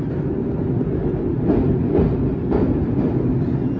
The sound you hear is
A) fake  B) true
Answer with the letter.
B